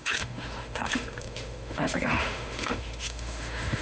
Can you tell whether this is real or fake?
fake